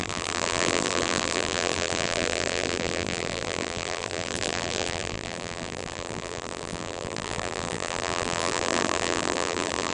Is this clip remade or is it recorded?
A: remade